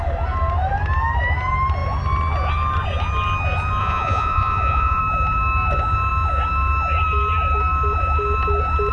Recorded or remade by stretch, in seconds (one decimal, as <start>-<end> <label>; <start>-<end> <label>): 0.0-3.8 recorded; 3.8-5.0 remade; 5.0-8.9 recorded